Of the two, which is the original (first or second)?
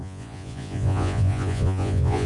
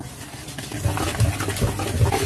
second